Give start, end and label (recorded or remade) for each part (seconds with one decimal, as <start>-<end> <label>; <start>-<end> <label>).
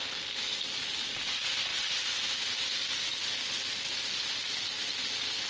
0.0-5.5 recorded